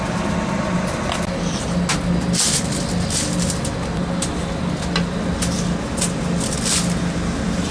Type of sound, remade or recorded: recorded